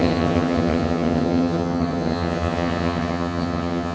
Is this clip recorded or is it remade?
remade